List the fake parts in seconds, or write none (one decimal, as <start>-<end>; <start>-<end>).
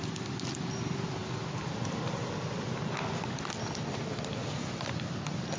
none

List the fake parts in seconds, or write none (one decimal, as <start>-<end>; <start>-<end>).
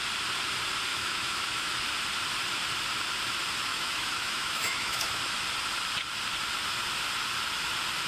0.9-1.7; 3.7-5.2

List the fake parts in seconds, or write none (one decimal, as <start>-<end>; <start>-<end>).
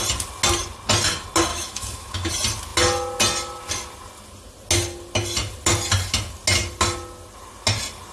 1.5-2.3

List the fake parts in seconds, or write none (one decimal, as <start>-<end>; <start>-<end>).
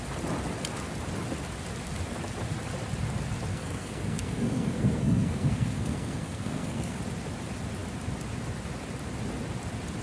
3.5-7.0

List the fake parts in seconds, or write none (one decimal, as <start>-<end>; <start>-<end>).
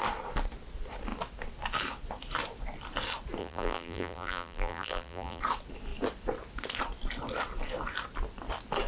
3.4-5.4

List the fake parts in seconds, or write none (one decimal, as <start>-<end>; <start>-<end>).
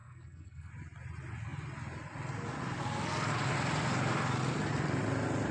0.0-0.7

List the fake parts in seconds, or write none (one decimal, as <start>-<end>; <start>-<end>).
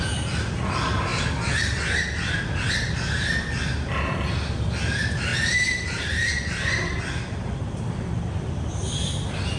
5.3-6.3